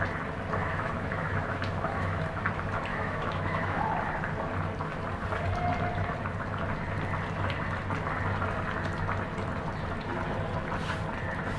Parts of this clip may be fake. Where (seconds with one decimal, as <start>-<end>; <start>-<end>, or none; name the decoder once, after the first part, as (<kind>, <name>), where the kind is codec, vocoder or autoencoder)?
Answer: 0.6-2.4 (autoencoder, DAC-VAE); 2.9-3.8